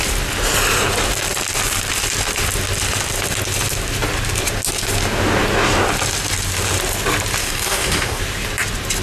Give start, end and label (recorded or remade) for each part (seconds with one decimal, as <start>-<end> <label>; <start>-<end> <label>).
0.0-7.4 recorded; 7.4-8.2 remade; 8.2-9.0 recorded